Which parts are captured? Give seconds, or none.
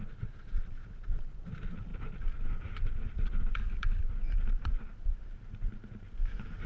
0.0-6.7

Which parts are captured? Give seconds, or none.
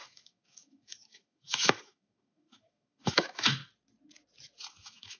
3.6-4.7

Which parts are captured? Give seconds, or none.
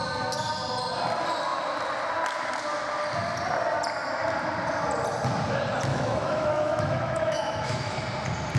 0.0-5.9; 8.0-8.6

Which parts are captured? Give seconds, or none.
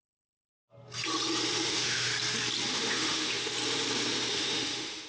0.5-1.7; 2.1-2.7; 3.5-4.3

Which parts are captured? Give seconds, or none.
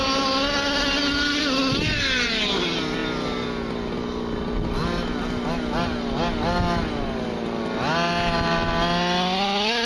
0.0-9.8